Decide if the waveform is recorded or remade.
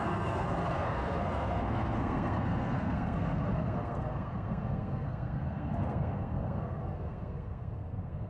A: remade